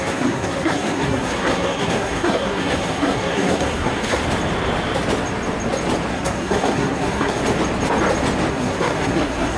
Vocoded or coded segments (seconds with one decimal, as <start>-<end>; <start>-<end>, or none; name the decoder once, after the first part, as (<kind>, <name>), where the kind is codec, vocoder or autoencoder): 0.0-4.2 (codec, SNAC); 6.1-7.4; 8.5-9.6